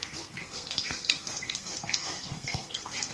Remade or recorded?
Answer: remade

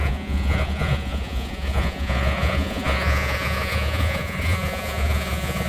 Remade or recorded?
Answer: remade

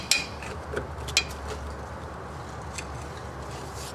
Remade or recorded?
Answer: recorded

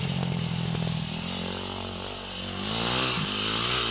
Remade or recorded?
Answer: recorded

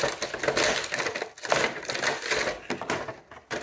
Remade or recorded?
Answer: recorded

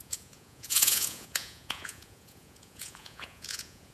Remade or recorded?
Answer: remade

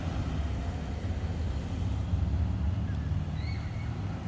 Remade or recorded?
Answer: recorded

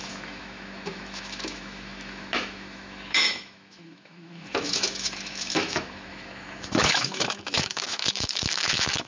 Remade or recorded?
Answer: remade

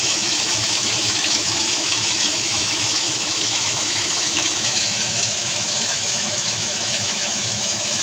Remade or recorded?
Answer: remade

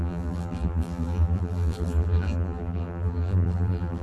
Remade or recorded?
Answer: remade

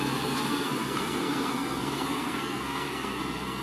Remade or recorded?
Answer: remade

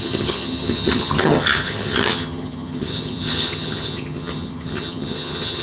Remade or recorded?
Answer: remade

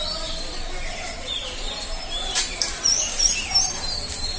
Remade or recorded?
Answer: remade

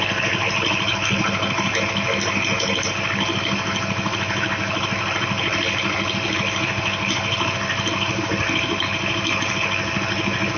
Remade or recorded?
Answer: recorded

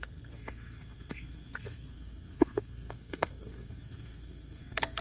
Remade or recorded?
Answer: remade